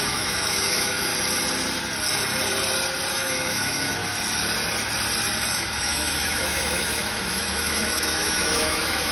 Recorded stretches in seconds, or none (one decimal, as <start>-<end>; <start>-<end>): 1.1-3.1; 4.0-5.5